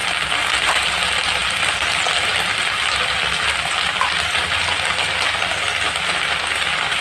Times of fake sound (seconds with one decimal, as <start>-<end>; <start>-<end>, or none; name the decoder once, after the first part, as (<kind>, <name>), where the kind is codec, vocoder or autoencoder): 1.4-2.3 (vocoder, BigVGAN v2)